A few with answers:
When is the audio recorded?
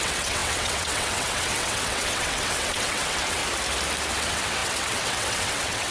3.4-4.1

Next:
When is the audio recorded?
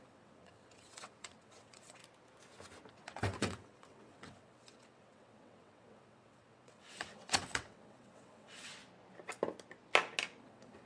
2.0-2.9; 8.8-10.4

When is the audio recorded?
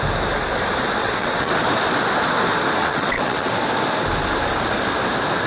0.0-1.0; 1.5-2.8; 3.5-5.5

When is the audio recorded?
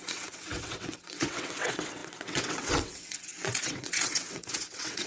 none